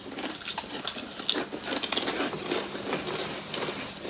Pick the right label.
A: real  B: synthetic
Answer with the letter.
A